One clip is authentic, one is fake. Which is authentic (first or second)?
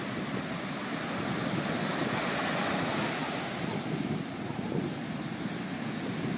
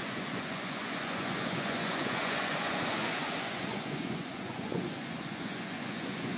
first